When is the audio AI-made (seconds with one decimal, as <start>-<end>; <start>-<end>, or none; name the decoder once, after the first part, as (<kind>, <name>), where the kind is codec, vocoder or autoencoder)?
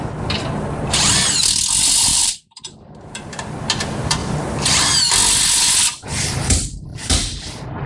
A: 2.1-3.4 (vocoder, BigVGAN v2); 4.2-4.8; 6.9-7.9